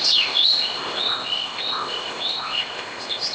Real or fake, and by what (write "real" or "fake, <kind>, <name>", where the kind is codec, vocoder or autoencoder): fake, codec, ZipCodec